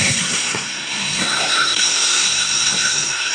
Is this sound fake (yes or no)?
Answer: yes